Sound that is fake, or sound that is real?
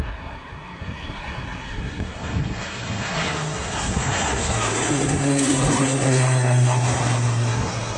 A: fake